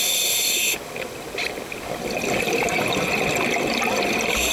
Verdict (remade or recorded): recorded